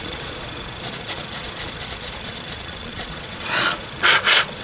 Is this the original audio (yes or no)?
no